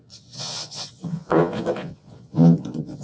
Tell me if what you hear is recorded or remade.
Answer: remade